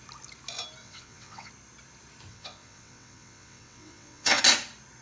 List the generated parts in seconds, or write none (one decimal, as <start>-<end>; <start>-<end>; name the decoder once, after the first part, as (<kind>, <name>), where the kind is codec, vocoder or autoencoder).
0.8-1.5 (vocoder, WaveNeXt); 2.3-4.4